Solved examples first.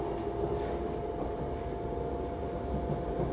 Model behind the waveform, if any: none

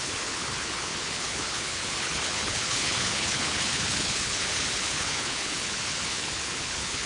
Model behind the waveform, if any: codec, HILCodec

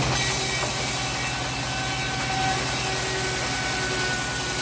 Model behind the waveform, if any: none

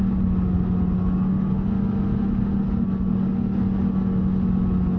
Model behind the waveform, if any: none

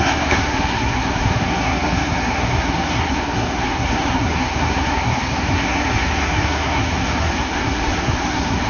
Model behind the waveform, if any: codec, SNAC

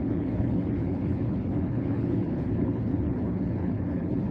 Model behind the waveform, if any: codec, HILCodec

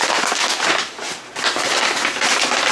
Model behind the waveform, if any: none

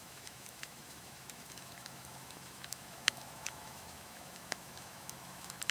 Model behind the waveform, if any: autoencoder, DAC-VAE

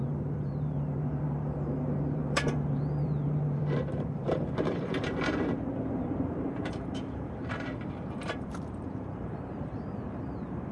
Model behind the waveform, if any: vocoder, BigVGAN v2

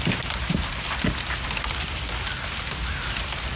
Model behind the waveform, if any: none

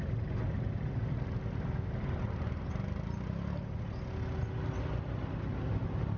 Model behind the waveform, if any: none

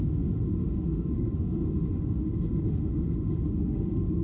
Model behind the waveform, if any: autoencoder, DAC-VAE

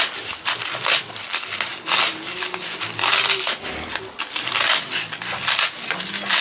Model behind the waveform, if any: none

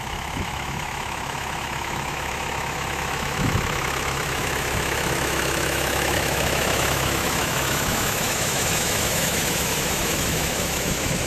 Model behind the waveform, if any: autoencoder, DAC-VAE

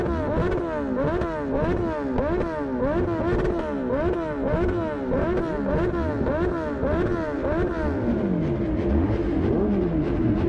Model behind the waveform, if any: none